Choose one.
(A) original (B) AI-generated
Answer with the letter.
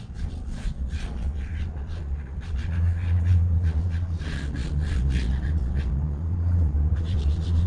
B